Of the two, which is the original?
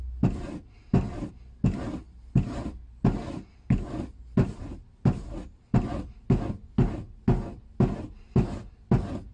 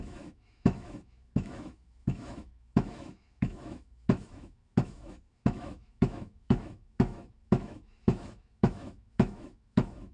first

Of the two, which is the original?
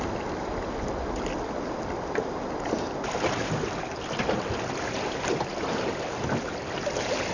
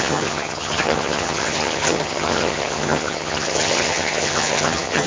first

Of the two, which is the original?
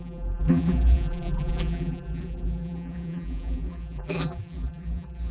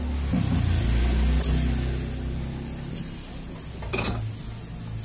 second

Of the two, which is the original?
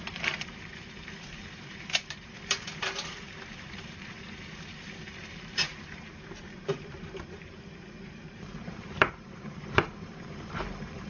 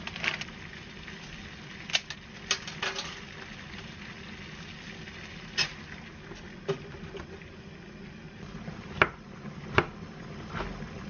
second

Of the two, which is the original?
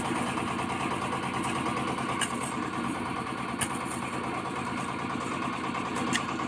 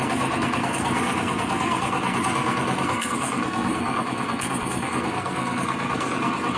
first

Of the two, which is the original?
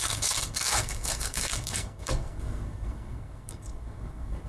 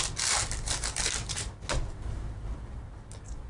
second